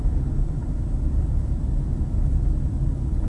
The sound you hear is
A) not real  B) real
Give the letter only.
B